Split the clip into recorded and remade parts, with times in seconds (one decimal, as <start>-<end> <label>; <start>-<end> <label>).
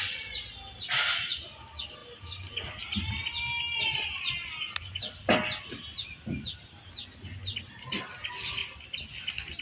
0.0-9.6 recorded